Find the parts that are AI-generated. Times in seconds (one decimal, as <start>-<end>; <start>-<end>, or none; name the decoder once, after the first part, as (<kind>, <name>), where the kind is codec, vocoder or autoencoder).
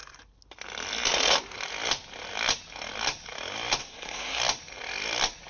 3.8-4.4 (codec, SNAC)